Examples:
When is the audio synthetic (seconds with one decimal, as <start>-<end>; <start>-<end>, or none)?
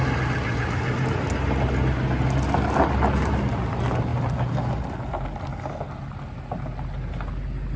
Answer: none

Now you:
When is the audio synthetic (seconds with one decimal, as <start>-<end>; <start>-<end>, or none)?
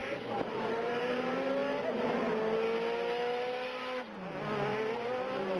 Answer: 0.0-1.2; 4.7-5.6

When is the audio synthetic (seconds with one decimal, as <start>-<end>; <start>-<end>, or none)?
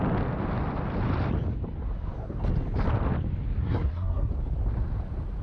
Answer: 3.6-4.3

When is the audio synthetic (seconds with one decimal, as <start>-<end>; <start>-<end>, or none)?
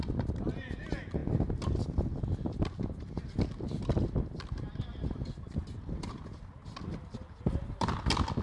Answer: none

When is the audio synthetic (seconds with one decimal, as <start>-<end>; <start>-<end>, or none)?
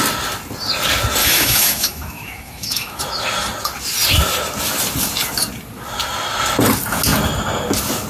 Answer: 1.2-3.0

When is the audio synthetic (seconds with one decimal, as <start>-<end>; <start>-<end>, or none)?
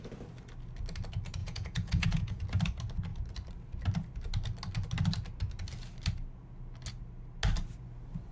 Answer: 1.4-2.4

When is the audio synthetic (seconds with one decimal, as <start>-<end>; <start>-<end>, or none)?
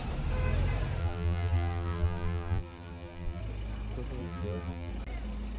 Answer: 1.0-3.4; 4.2-4.9